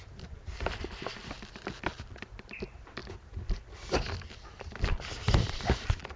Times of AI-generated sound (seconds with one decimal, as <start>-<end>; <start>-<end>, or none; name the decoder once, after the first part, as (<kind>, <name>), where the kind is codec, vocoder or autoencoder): 0.0-3.0 (vocoder, BigVGAN v2); 4.3-6.2